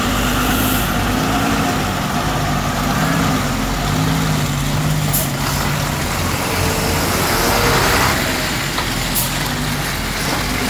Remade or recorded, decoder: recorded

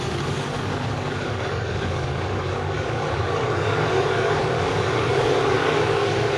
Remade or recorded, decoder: remade, codec, DAC